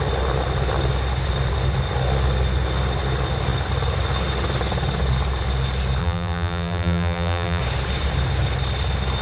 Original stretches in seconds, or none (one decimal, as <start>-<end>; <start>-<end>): 0.0-6.0; 7.6-9.2